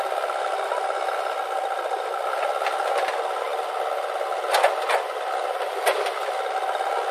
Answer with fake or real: real